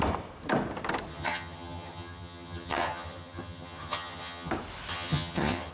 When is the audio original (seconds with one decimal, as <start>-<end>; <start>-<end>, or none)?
0.0-1.1; 4.5-4.9